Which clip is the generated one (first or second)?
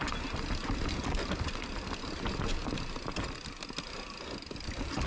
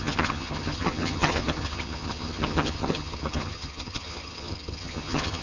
second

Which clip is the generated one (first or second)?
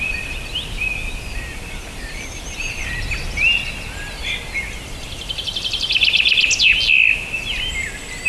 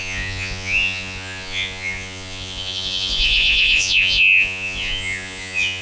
second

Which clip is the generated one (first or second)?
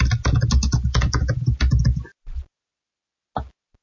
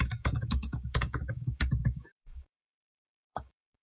second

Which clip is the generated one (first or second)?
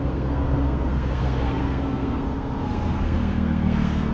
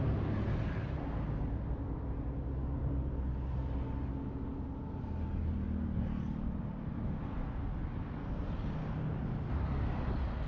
first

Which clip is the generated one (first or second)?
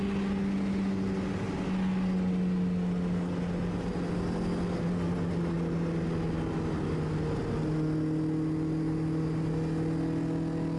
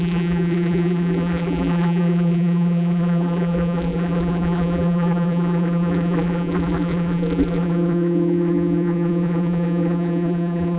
second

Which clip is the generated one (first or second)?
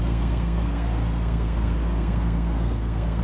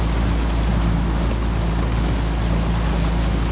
first